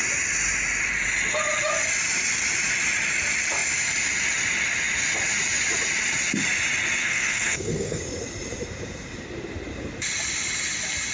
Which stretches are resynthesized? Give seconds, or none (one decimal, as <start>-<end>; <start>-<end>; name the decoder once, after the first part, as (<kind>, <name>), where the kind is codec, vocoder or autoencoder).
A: 7.0-8.0 (codec, SNAC)